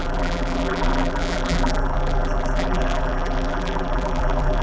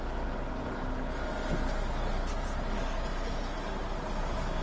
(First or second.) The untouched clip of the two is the second